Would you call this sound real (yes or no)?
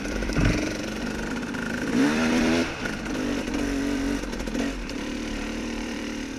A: no